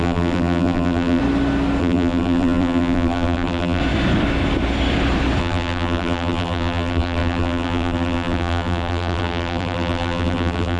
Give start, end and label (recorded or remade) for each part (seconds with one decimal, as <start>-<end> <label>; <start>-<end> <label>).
0.0-1.2 remade; 1.2-1.8 recorded; 1.8-3.8 remade; 3.8-5.4 recorded; 5.4-10.8 remade